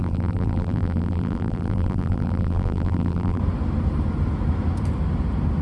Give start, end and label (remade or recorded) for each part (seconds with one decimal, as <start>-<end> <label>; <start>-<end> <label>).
0.0-3.4 remade; 3.4-5.6 recorded